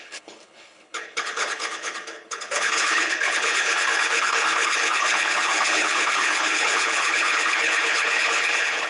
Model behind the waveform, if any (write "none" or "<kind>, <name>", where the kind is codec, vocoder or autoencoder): codec, HILCodec